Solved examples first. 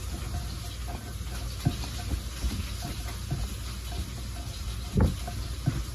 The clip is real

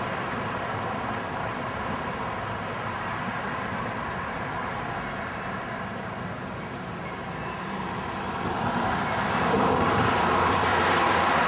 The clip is fake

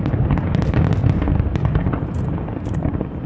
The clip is real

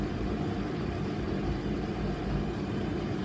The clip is fake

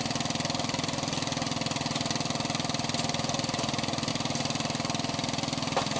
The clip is real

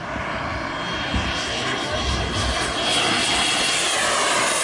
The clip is real